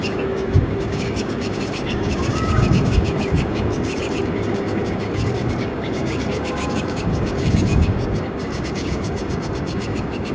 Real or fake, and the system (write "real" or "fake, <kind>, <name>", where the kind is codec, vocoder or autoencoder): fake, codec, DAC